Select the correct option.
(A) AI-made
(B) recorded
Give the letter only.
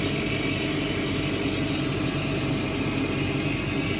B